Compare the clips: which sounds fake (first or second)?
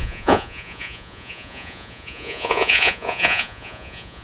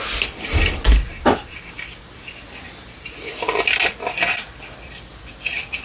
first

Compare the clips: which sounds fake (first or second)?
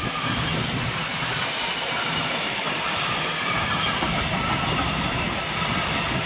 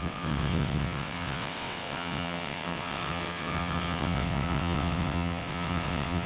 second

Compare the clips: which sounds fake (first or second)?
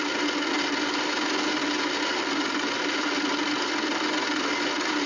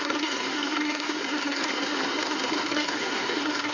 second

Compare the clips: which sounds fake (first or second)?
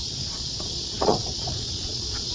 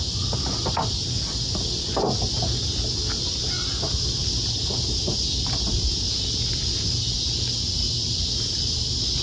first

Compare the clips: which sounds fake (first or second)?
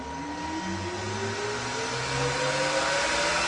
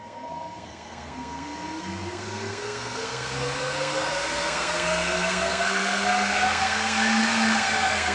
second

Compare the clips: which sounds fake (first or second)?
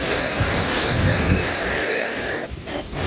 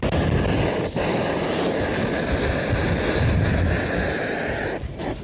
first